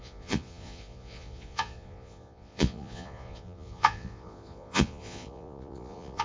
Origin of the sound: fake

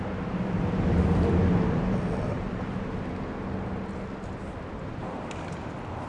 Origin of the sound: real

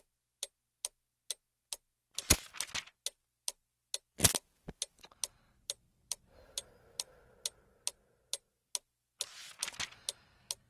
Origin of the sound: real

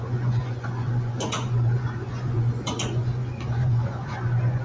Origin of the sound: fake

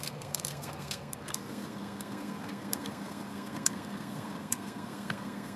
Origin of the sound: fake